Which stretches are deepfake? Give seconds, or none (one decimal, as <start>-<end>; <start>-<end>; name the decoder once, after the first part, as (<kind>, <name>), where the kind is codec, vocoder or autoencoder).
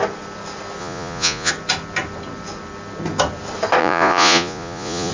0.8-1.5 (vocoder, Vocos); 3.8-5.1